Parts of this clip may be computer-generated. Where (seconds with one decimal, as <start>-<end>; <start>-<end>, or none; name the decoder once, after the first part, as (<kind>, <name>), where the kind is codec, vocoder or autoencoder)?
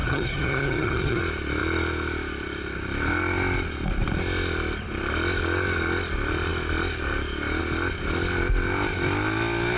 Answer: 0.0-1.2 (vocoder, HiFi-GAN)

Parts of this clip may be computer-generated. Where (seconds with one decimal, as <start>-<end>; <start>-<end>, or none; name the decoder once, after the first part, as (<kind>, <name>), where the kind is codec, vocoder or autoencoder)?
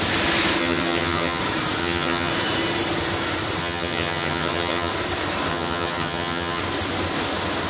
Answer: 0.6-1.4 (vocoder, HiFi-GAN); 1.8-2.3; 3.6-4.9; 5.5-6.6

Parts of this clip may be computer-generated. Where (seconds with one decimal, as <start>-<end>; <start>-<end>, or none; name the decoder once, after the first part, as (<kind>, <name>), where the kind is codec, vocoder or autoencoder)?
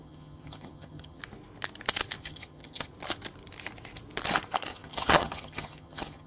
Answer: 0.0-1.2 (vocoder, HiFi-GAN); 2.2-2.9; 4.7-6.3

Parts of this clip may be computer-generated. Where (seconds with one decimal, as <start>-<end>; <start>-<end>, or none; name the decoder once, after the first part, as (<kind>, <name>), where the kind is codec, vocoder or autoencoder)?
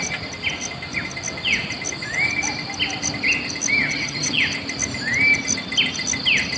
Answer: 3.8-4.4 (vocoder, HiFi-GAN)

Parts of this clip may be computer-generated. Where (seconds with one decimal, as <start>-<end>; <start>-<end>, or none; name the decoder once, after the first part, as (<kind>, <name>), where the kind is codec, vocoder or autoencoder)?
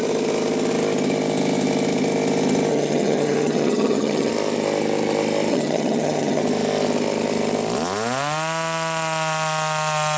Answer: 2.7-4.3 (vocoder, HiFi-GAN); 5.5-6.4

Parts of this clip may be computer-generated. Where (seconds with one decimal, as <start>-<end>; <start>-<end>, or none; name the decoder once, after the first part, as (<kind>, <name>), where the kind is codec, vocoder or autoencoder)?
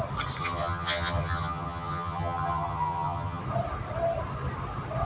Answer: 0.4-3.4 (vocoder, HiFi-GAN)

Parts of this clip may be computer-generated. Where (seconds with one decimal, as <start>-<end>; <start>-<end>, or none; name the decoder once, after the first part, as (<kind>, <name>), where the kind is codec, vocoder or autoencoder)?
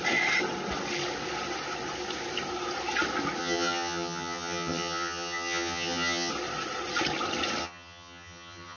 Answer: 3.4-6.3 (vocoder, HiFi-GAN); 7.6-8.8